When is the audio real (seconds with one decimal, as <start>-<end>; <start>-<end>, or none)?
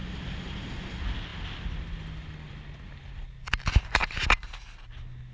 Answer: 0.0-5.3